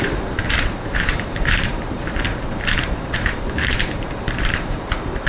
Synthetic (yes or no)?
yes